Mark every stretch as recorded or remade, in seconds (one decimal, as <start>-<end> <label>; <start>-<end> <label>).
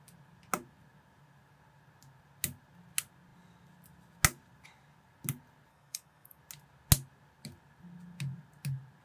0.0-5.7 recorded; 5.7-6.4 remade; 6.4-9.0 recorded